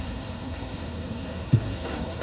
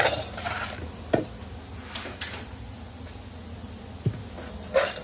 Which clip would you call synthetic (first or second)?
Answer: first